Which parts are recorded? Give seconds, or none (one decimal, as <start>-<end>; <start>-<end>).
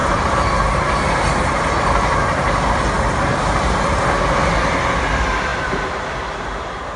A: 1.5-5.5